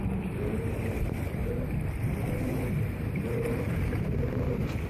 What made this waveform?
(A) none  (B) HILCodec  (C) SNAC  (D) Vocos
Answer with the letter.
A